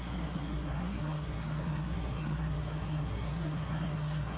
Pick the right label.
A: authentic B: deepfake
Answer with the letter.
B